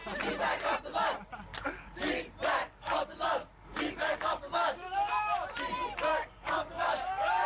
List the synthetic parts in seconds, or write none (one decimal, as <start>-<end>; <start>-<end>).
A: 1.5-2.2; 2.6-5.5; 6.1-7.5